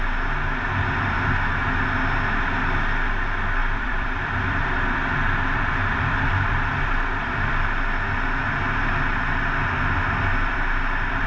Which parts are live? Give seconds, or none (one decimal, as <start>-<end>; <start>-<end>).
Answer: 0.0-3.6; 7.6-10.3